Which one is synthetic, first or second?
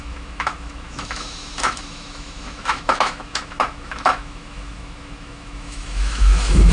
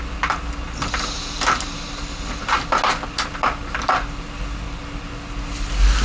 first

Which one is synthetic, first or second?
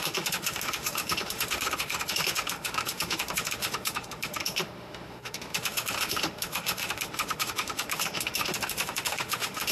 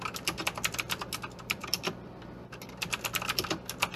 first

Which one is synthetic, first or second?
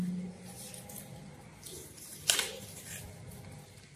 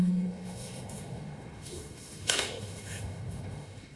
second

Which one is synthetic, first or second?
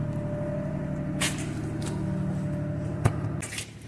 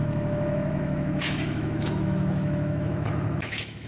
second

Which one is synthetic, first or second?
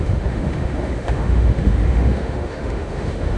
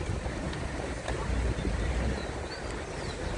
first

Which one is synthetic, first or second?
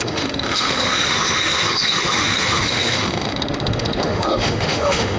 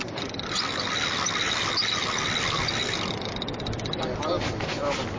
first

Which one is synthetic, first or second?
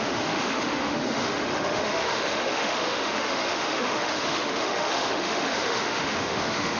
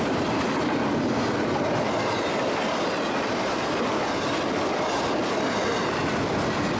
first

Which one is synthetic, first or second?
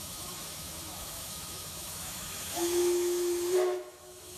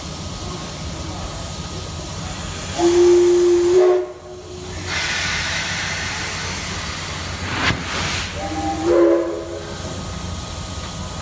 first